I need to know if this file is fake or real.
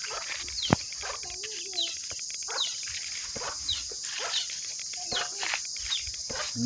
real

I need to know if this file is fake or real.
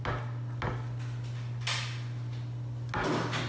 real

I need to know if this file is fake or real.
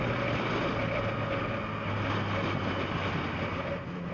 real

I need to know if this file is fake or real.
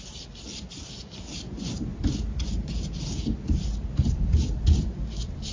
real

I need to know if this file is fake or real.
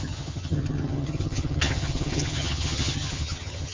fake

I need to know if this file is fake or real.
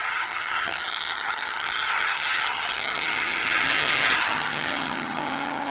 fake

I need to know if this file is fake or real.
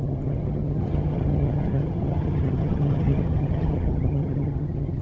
fake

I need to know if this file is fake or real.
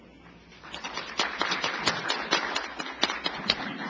real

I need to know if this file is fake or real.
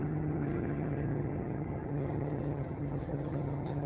fake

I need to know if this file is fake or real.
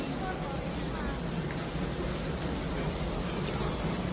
real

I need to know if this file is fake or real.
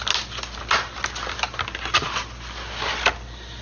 real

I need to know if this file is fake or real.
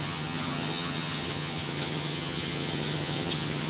fake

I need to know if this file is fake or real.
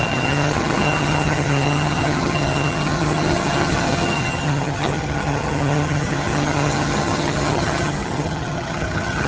fake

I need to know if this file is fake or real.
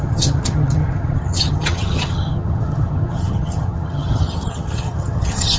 fake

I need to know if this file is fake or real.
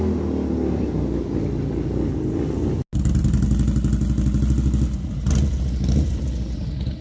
real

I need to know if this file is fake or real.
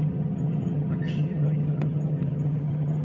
fake